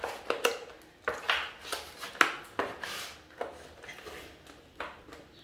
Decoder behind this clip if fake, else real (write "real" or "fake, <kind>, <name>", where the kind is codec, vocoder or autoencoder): real